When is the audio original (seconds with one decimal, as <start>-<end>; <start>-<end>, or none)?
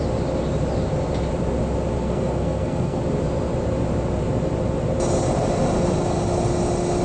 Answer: 0.0-2.0; 3.0-7.0